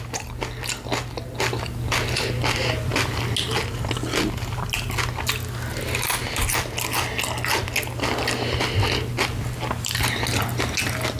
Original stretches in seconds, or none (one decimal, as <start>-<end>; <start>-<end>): 0.0-11.2